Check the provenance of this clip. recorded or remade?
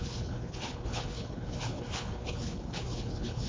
remade